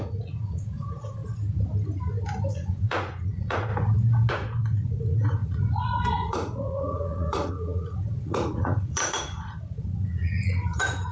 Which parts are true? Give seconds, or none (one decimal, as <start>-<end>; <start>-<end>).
1.2-2.5; 3.7-4.3